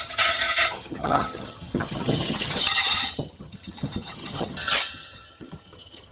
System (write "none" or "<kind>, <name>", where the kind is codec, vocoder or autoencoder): vocoder, HiFi-GAN